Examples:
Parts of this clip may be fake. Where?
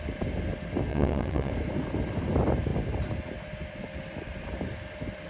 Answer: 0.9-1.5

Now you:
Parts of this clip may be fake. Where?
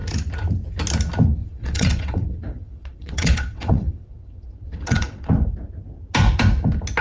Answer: 1.4-5.3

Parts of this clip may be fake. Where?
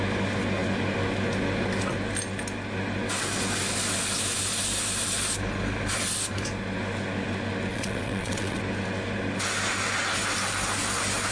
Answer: 7.7-8.6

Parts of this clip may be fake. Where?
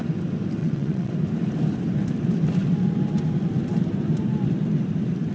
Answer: 0.6-1.1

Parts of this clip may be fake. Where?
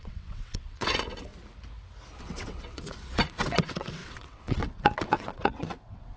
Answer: 0.0-1.3; 2.2-6.2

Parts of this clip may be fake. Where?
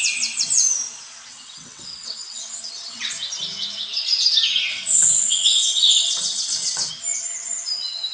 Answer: 1.3-3.1; 4.7-6.9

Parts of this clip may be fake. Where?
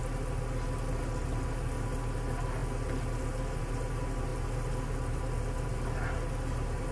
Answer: none